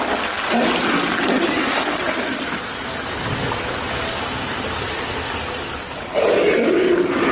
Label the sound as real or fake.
real